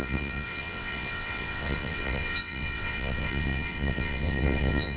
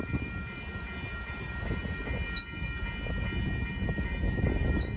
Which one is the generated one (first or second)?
first